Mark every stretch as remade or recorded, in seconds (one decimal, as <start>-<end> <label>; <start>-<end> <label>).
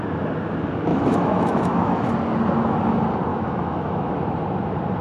0.0-0.9 recorded; 0.9-2.1 remade; 2.1-3.3 recorded; 3.3-4.2 remade; 4.2-5.0 recorded